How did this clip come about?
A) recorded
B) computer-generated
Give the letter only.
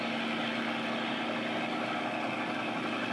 A